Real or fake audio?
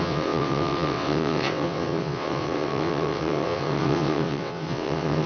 fake